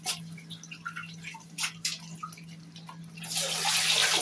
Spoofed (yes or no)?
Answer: no